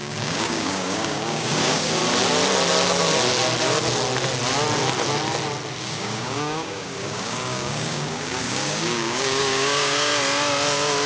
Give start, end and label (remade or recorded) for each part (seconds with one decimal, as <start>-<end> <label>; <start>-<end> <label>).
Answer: 0.0-2.0 remade; 2.0-5.8 recorded; 5.8-10.1 remade; 10.1-11.1 recorded

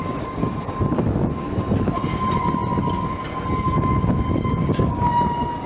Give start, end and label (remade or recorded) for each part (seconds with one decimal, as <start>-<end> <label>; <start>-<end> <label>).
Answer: 0.0-0.4 remade; 0.4-3.8 recorded; 3.8-5.7 remade